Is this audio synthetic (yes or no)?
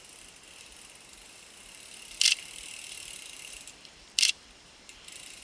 yes